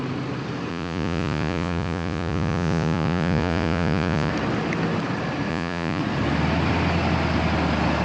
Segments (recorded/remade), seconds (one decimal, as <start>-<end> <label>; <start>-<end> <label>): 0.0-0.7 recorded; 0.7-4.3 remade; 4.3-5.5 recorded; 5.5-6.0 remade; 6.0-8.0 recorded